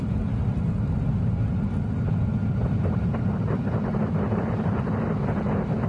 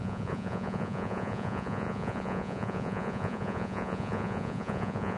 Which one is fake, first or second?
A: second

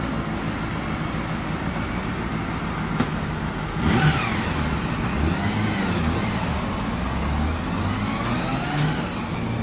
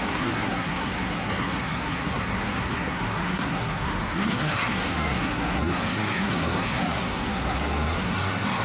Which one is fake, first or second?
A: second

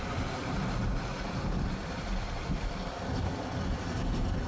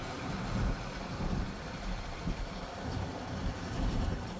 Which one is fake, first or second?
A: second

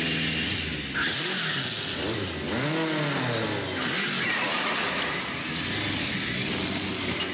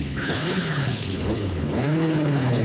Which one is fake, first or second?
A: second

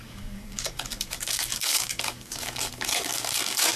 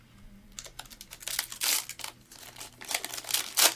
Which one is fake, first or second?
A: first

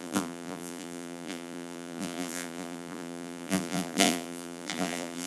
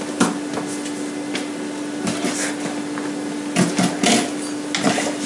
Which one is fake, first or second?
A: first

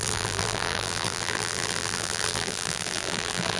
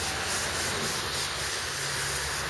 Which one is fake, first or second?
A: first